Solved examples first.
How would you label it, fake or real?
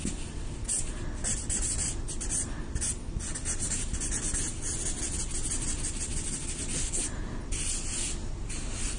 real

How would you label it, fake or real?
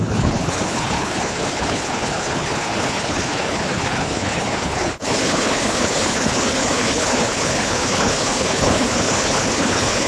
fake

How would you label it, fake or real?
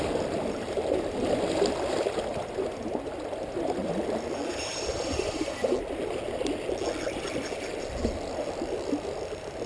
real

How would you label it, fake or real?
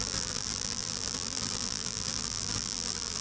fake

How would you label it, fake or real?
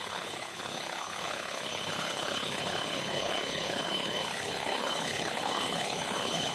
fake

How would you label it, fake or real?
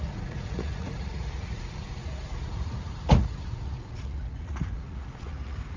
fake